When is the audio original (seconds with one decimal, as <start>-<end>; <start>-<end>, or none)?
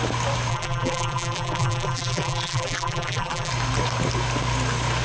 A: 0.0-0.5; 3.5-5.0